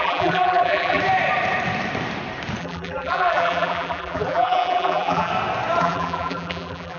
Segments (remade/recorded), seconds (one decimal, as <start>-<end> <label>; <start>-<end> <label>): 0.0-1.0 remade; 1.0-2.6 recorded; 2.6-5.3 remade; 5.3-5.8 recorded; 5.8-7.0 remade